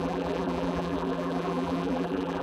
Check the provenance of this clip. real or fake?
fake